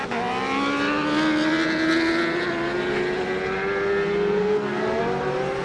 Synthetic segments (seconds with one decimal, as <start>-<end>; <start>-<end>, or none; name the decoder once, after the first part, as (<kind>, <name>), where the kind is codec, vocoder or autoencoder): 4.4-5.0 (codec, SNAC)